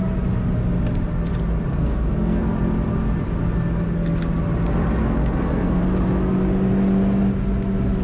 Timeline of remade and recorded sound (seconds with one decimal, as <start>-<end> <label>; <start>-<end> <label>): 0.0-1.7 recorded; 1.7-2.4 remade; 2.4-5.0 recorded; 5.0-5.8 remade; 5.8-8.0 recorded